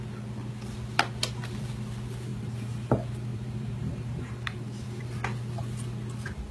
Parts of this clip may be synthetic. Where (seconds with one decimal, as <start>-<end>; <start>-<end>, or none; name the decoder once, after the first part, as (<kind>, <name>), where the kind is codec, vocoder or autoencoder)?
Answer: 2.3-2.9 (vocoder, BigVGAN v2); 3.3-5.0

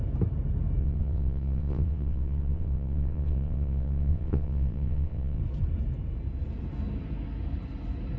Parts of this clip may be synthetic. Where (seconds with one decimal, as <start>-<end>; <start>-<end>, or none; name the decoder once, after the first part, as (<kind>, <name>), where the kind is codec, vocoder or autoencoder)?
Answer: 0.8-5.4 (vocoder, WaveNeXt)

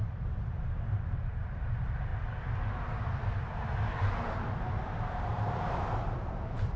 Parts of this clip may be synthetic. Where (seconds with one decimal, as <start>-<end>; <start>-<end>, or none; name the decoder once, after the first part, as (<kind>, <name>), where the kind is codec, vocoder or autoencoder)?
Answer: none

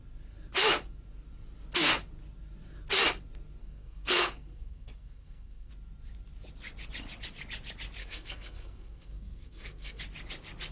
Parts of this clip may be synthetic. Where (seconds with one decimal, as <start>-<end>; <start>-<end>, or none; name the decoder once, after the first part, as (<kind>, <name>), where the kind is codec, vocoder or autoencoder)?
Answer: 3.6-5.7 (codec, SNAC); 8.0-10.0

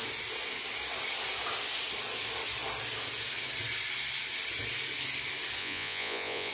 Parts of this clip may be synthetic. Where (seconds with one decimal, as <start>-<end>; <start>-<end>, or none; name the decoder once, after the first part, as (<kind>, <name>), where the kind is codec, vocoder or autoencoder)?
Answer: 5.6-6.5 (vocoder, Vocos)

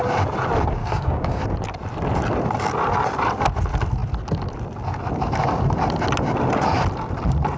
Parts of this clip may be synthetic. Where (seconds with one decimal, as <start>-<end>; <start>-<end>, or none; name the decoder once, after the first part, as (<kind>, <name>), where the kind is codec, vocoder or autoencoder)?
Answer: 0.8-1.4 (codec, DAC)